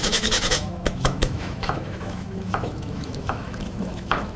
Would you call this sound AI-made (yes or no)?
yes